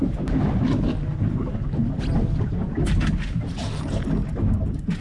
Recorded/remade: recorded